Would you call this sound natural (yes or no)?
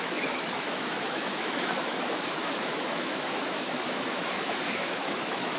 no